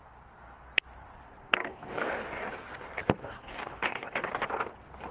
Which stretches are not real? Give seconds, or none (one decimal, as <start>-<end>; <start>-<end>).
1.6-2.1; 3.2-4.3